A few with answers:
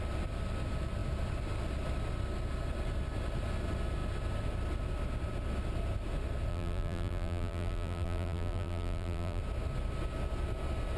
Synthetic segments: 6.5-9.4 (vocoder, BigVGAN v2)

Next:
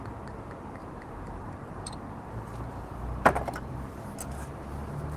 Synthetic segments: 0.8-3.9 (vocoder, BigVGAN v2)

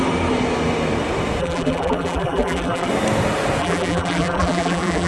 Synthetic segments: 1.4-2.9 (vocoder, BigVGAN v2); 3.6-5.1

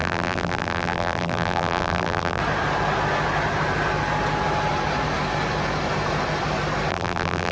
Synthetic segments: 0.0-2.4 (vocoder, BigVGAN v2); 6.9-7.5

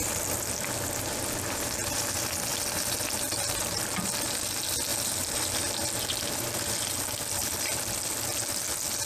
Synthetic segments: 2.5-4.2 (vocoder, BigVGAN v2); 4.9-5.7

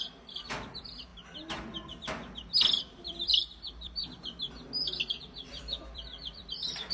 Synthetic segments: 0.0-1.1 (vocoder, BigVGAN v2); 2.8-4.0; 5.2-6.9

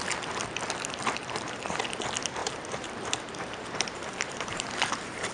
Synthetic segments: 1.2-1.8 (vocoder, BigVGAN v2); 2.4-5.3